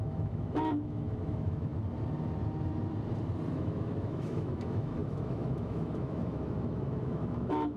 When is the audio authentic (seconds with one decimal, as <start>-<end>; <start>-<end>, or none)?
1.7-3.5